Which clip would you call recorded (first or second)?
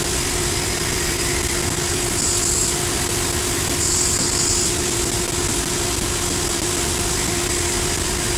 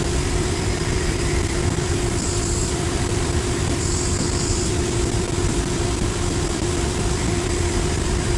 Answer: first